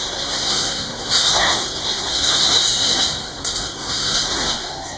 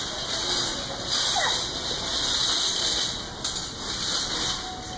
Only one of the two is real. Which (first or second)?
second